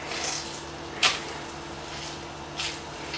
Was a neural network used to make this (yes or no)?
no